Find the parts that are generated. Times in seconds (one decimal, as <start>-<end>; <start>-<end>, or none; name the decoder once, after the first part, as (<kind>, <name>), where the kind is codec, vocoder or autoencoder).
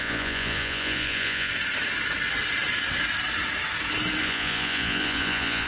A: 0.0-1.5 (vocoder, Vocos); 4.2-5.7